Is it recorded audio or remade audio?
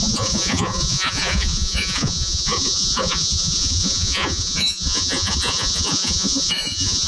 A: remade